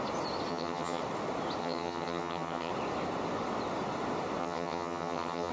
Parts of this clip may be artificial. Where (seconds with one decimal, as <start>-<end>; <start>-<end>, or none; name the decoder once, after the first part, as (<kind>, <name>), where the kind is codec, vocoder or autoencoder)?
0.5-1.0 (vocoder, HiFi-GAN); 1.6-2.7; 4.4-5.5